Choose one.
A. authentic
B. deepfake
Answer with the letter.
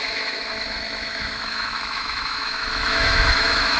B